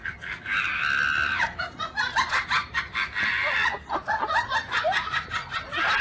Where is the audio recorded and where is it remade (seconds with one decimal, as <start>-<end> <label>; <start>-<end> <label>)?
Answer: 0.0-1.3 recorded; 1.3-2.4 remade; 2.4-6.0 recorded